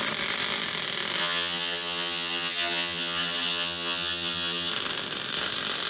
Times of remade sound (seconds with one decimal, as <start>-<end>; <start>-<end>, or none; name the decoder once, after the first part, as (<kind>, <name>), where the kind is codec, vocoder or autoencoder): 1.2-4.7 (vocoder, HiFi-GAN)